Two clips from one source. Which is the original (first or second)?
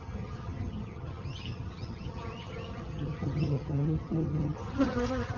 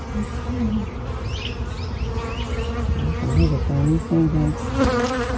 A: second